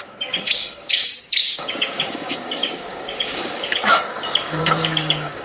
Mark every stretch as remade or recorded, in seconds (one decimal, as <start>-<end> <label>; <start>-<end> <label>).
0.0-5.4 remade